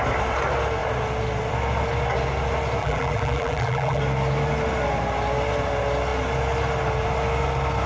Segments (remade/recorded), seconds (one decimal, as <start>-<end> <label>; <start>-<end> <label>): 0.0-2.8 recorded; 2.8-4.0 remade; 4.0-7.9 recorded